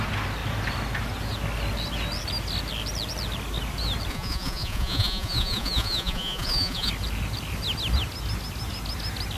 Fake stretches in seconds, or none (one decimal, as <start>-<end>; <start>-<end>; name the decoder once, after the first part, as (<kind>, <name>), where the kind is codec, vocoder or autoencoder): 4.1-6.9 (vocoder, Vocos)